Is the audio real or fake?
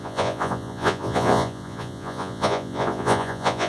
fake